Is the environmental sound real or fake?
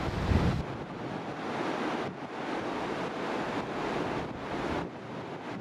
real